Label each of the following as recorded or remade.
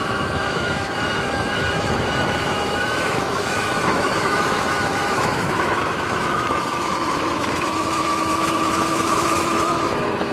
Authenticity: remade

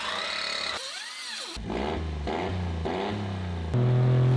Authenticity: recorded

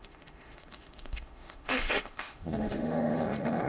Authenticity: remade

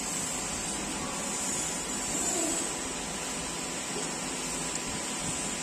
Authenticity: recorded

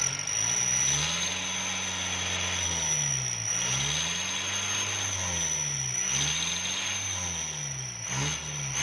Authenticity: recorded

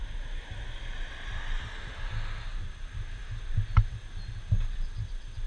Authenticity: recorded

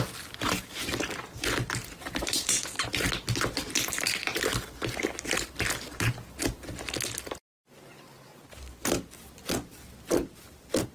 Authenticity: recorded